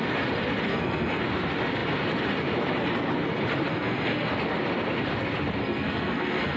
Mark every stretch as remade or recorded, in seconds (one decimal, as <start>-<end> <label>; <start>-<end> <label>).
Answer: 0.0-0.7 recorded; 0.7-1.2 remade; 1.2-3.7 recorded; 3.7-4.3 remade; 4.3-5.6 recorded; 5.6-6.6 remade